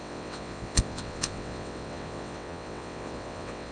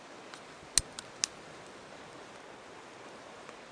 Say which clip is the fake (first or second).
first